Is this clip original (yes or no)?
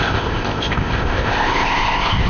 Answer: no